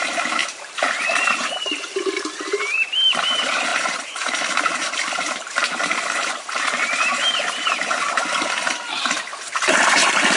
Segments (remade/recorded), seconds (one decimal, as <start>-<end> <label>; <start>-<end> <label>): 0.0-10.4 remade